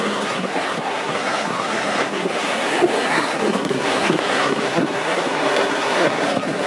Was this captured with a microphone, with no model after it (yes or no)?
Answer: no